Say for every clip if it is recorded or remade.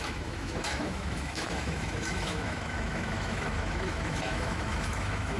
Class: remade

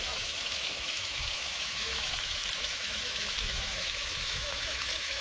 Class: remade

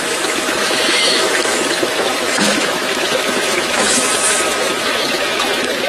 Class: remade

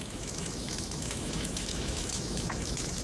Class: remade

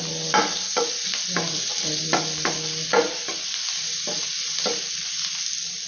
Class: recorded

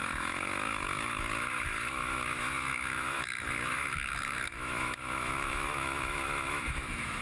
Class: remade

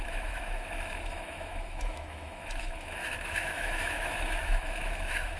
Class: remade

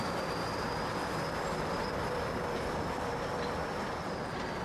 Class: recorded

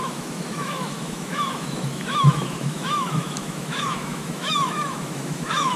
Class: remade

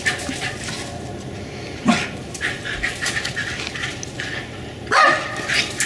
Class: recorded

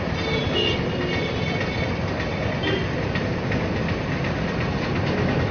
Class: recorded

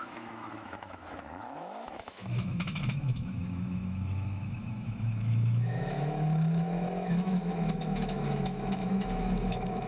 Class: remade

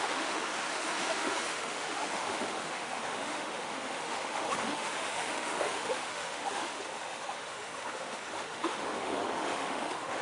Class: remade